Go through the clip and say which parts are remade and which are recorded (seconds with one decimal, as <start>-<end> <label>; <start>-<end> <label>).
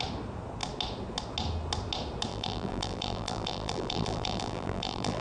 0.0-2.3 recorded; 2.3-5.2 remade